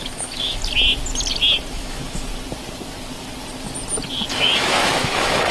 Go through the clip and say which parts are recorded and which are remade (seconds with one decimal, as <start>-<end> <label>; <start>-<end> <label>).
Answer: 0.0-0.6 remade; 0.6-1.7 recorded; 1.7-2.3 remade; 2.3-4.3 recorded; 4.3-5.5 remade